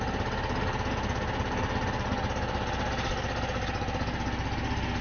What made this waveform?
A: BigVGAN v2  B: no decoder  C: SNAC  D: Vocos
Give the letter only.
B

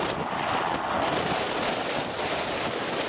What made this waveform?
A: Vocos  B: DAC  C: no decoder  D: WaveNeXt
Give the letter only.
C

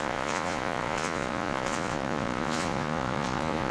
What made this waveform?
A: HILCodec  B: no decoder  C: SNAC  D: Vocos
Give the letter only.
D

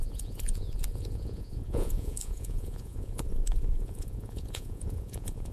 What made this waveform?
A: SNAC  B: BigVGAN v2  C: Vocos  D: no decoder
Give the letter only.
C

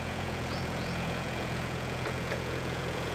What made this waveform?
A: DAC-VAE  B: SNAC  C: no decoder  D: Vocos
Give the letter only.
D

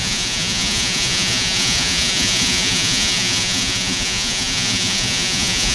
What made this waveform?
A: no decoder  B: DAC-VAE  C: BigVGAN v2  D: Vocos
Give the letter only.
D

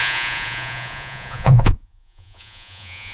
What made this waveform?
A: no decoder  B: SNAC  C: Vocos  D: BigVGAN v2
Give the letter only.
C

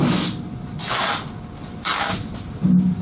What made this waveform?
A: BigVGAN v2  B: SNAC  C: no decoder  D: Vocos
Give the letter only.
C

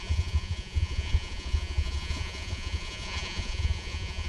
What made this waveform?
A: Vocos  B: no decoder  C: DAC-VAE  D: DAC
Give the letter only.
A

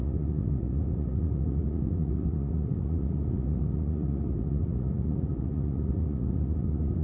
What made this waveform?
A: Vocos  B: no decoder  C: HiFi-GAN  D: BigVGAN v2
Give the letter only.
A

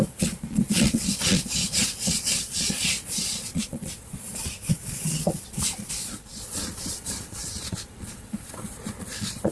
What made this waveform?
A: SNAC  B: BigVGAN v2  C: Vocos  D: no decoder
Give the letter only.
C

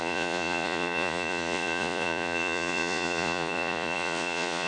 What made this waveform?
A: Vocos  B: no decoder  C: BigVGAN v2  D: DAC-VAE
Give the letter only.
A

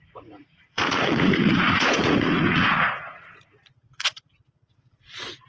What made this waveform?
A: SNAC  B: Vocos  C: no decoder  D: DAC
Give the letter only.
B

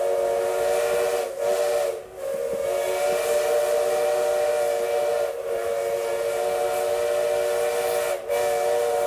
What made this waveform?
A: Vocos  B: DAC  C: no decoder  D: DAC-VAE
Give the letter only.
C